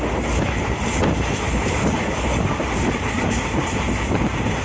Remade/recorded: recorded